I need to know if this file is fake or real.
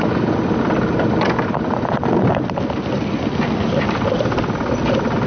real